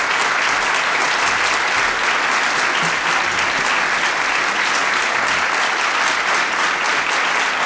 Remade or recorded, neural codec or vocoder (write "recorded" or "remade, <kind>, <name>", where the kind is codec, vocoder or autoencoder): recorded